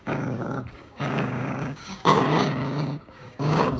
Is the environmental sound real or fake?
fake